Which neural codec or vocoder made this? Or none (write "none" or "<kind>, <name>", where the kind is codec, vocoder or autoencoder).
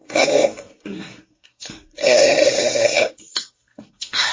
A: codec, SNAC